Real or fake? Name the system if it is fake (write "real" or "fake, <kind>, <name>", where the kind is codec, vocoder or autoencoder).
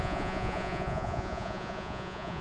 fake, vocoder, Vocos